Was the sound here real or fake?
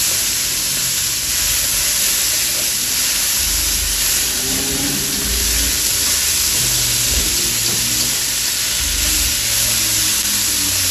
real